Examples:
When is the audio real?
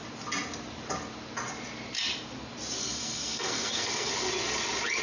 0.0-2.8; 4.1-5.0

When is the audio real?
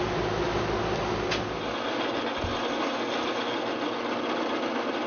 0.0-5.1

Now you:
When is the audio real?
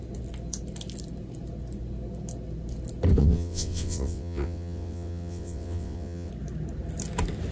0.0-3.2; 6.3-7.5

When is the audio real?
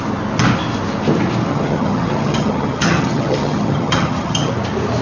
0.0-1.5; 4.5-5.0